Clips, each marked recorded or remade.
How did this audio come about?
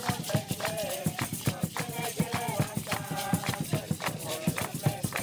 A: remade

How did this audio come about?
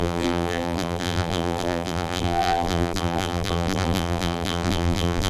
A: remade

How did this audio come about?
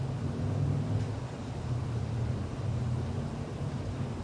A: recorded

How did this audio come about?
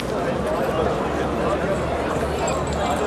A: recorded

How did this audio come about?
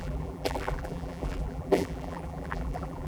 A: remade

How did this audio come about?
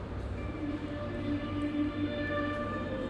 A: remade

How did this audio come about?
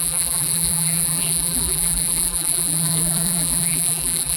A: remade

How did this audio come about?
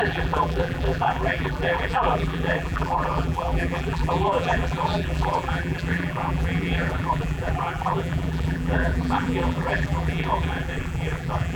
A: remade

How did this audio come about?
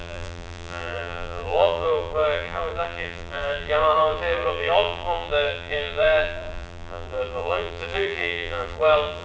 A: remade